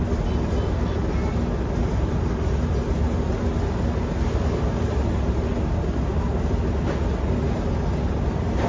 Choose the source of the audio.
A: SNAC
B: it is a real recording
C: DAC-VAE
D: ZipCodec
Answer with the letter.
B